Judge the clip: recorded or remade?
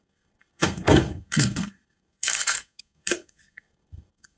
remade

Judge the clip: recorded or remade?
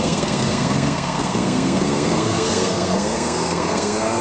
remade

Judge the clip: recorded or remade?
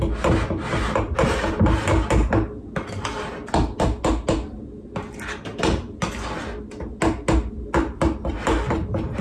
recorded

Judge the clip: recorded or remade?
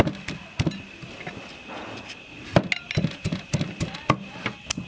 recorded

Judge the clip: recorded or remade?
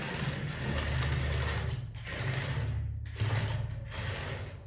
recorded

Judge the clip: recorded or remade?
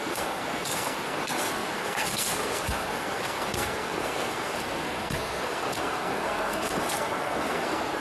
remade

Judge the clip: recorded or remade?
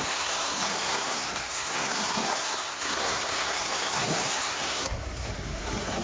remade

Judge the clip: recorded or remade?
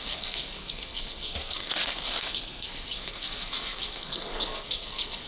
remade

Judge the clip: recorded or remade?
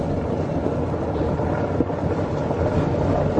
recorded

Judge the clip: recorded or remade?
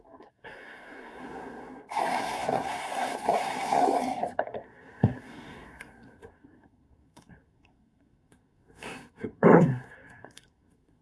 remade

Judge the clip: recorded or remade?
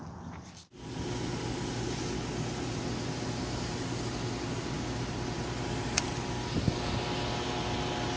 recorded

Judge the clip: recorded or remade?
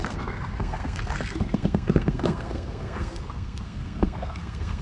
remade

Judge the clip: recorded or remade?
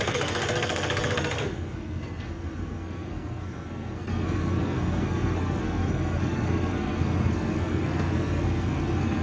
remade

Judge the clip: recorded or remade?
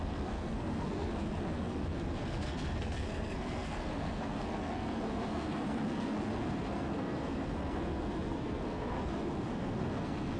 remade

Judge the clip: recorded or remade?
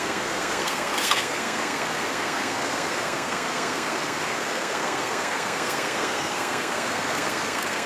remade